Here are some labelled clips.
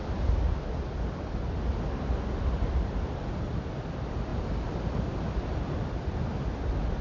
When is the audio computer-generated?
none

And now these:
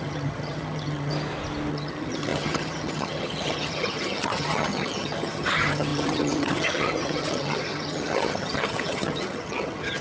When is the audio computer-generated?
0.0-1.1 (vocoder, HiFi-GAN); 1.7-10.0

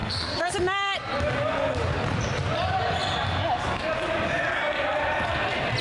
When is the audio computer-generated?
0.0-0.5 (codec, SNAC)

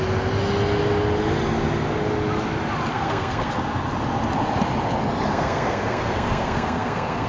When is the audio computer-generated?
2.9-3.5 (codec, SNAC); 5.3-7.3

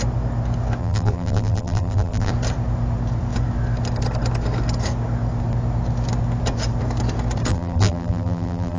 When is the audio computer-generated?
0.8-2.3 (vocoder, BigVGAN v2); 7.5-8.8